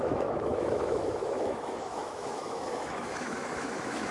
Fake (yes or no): yes